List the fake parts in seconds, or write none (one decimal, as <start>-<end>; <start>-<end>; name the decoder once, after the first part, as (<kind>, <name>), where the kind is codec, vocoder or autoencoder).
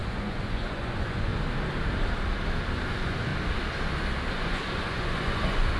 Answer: 0.0-1.3 (vocoder, Vocos); 2.9-3.3; 4.3-5.8